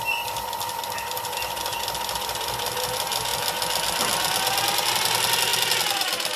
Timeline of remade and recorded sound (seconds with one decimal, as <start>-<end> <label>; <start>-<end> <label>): 0.0-6.4 recorded